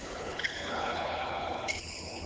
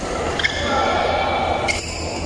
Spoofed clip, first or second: first